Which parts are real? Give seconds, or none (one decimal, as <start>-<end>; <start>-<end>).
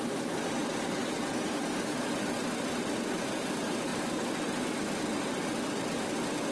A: 0.0-6.5